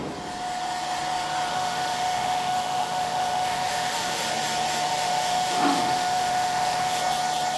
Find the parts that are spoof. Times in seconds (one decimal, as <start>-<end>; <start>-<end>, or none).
1.5-4.2; 4.9-7.0